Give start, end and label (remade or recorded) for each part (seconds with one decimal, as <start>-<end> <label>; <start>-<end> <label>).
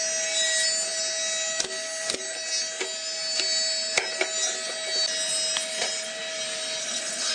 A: 0.0-6.8 recorded; 6.8-7.3 remade